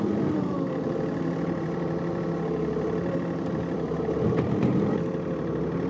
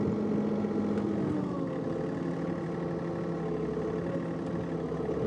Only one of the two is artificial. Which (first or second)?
first